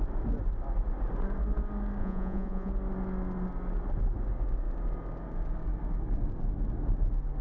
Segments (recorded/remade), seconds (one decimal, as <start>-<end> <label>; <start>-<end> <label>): 0.0-2.0 recorded; 2.0-2.7 remade; 2.7-7.4 recorded